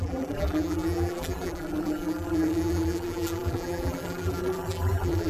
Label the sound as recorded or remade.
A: remade